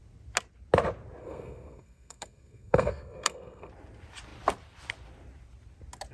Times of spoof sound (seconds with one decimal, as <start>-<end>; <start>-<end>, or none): 1.2-3.7